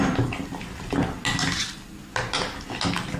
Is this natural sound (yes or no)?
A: yes